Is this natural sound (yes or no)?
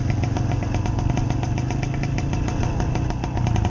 yes